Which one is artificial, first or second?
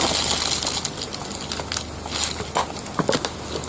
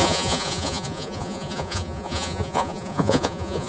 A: second